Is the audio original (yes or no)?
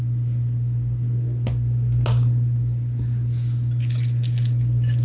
yes